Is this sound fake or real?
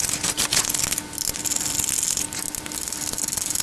real